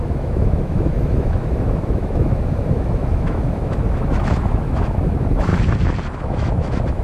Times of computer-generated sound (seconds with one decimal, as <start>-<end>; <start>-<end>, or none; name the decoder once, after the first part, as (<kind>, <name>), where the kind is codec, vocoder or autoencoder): 0.0-5.5 (autoencoder, DAC-VAE); 6.1-7.0